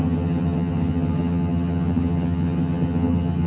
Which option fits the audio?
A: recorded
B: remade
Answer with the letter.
B